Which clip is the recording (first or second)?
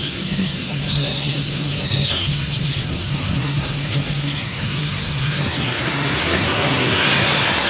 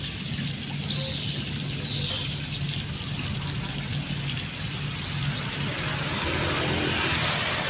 second